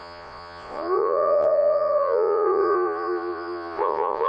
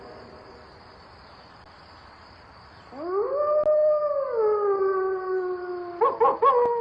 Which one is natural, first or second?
second